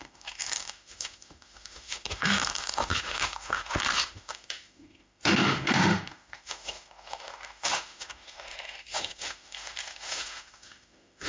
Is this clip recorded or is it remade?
remade